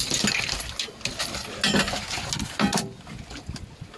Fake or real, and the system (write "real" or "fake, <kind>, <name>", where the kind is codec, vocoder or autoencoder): real